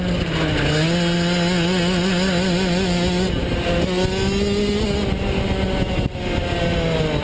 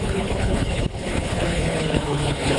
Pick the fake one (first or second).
second